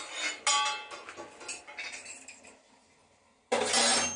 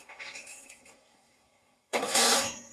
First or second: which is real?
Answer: first